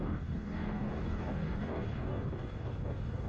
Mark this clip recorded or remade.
remade